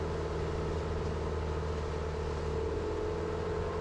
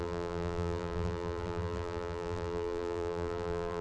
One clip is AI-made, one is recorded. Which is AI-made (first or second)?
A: second